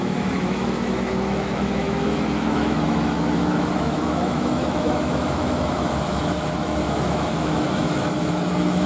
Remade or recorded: remade